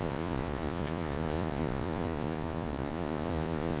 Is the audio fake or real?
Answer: fake